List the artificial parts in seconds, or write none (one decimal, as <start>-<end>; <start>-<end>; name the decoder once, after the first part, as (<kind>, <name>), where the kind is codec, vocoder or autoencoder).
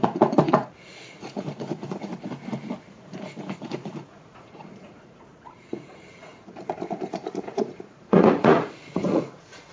0.0-2.1 (vocoder, Vocos); 2.8-9.7